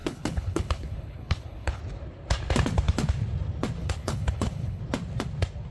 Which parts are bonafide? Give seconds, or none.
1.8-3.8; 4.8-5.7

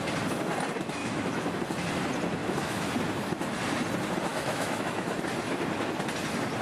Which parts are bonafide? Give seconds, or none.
0.0-1.0; 1.6-2.4; 2.9-4.3; 5.1-6.6

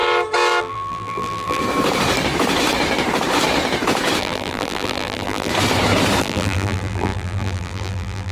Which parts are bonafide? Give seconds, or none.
0.0-0.6; 1.6-4.2; 5.5-6.2

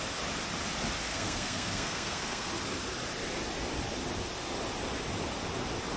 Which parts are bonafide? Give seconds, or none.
0.0-1.1; 2.5-6.0

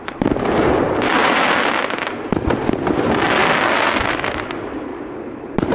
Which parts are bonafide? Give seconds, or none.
1.2-4.1

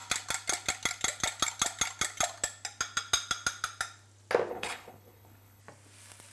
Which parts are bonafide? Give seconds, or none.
0.0-4.5; 5.6-6.3

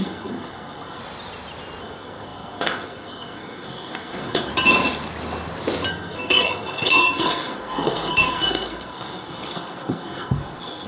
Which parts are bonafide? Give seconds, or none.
1.0-1.8; 4.5-5.9

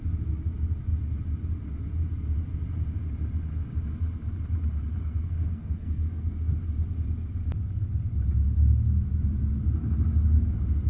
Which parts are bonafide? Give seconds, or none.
0.0-5.0; 6.3-10.9